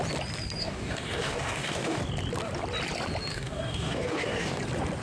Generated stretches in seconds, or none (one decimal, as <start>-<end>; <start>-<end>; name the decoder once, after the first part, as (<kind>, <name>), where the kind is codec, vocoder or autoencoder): 0.6-2.0 (codec, DAC); 3.3-4.6